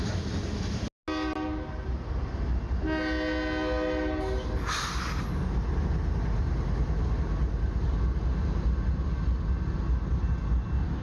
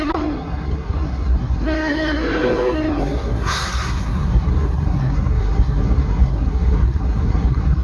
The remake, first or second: second